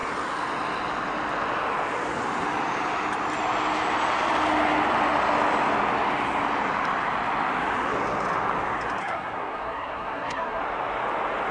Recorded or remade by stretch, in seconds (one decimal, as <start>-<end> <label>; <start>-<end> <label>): 0.0-9.0 recorded; 9.0-10.6 remade; 10.6-11.5 recorded

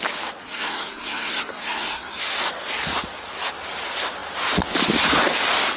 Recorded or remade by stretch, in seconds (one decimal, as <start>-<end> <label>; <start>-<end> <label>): 0.0-0.4 recorded; 0.4-2.2 remade; 2.2-5.8 recorded

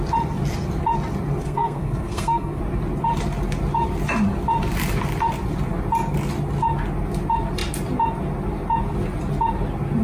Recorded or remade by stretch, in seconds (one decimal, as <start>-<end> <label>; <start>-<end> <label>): 0.0-1.4 recorded; 1.4-2.6 remade; 2.6-10.0 recorded

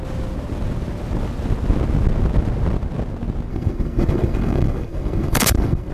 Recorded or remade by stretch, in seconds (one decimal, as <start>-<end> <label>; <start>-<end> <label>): 0.0-3.5 recorded; 3.5-5.9 remade

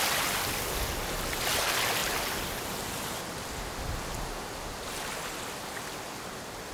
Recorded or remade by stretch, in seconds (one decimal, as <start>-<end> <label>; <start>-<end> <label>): 0.0-6.7 recorded

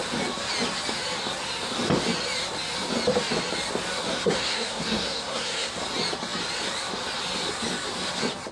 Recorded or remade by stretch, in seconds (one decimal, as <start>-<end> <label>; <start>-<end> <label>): 0.0-4.1 recorded; 4.1-5.7 remade; 5.7-8.5 recorded

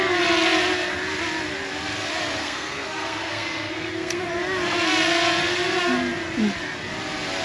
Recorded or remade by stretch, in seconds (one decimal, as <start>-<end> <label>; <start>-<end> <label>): 0.0-2.4 recorded; 2.4-4.3 remade; 4.3-7.4 recorded

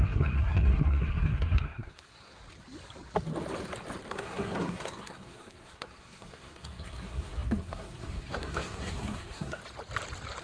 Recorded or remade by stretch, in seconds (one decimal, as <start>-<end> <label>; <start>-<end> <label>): 0.0-2.4 remade; 2.4-4.1 recorded; 4.1-9.6 remade; 9.6-10.4 recorded